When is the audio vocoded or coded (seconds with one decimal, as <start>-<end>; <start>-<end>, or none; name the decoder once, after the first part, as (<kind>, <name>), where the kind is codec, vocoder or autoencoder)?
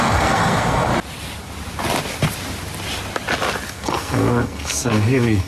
0.0-0.9 (codec, SNAC); 3.7-5.5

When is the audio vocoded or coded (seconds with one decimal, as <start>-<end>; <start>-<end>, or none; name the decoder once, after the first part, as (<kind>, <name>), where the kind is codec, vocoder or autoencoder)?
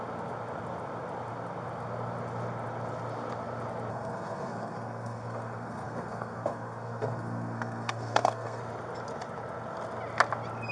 3.9-8.6 (codec, SNAC)